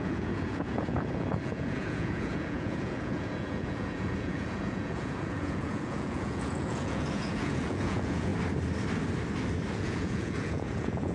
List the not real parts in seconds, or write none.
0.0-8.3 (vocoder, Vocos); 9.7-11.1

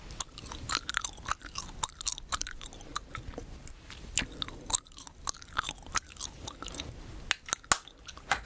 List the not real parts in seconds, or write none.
none

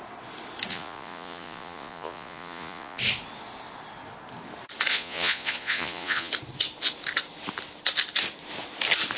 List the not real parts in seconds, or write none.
0.7-3.0 (vocoder, Vocos); 4.9-6.3

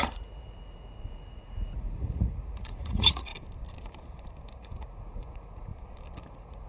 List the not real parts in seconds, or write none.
0.0-3.3 (vocoder, Vocos); 4.6-5.7; 6.3-6.7

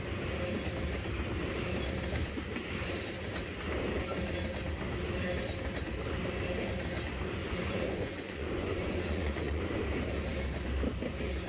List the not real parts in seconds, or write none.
7.4-9.6 (vocoder, Vocos)